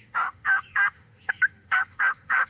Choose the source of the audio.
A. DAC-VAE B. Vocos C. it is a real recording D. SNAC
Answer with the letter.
A